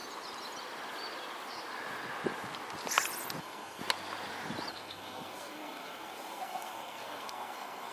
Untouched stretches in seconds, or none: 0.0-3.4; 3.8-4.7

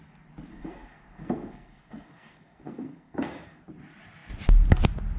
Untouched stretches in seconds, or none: 0.0-0.5; 3.6-5.2